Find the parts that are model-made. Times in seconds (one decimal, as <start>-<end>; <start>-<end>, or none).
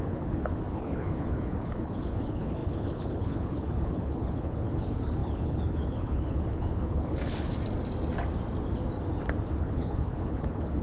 0.0-7.5; 9.6-10.8